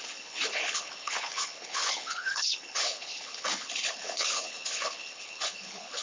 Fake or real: fake